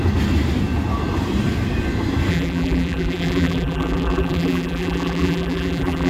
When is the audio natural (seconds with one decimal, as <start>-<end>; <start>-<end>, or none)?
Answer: 0.0-2.3